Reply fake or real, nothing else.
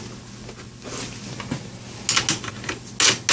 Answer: real